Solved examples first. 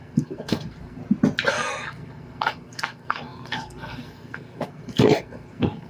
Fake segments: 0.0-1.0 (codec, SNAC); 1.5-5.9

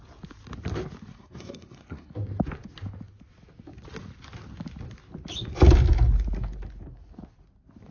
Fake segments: 1.1-2.1 (codec, SNAC)

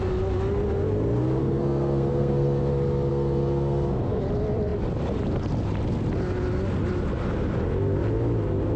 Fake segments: 1.4-2.6 (codec, SNAC); 3.1-4.2

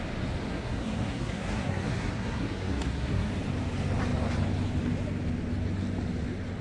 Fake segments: 0.5-3.3 (codec, SNAC)

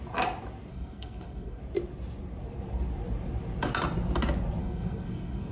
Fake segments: 0.7-1.6 (codec, SNAC); 4.6-5.5

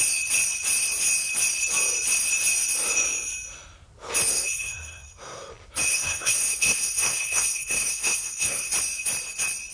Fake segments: 4.3-5.5 (codec, SNAC); 5.9-8.7

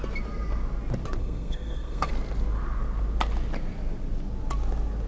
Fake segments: 1.2-2.1 (codec, SNAC)